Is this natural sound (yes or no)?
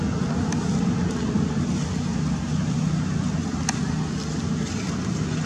yes